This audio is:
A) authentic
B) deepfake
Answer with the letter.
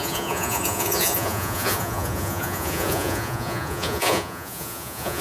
B